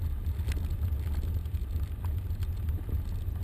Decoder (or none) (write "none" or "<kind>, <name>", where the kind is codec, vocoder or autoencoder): none